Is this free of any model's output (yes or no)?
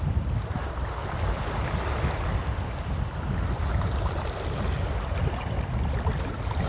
yes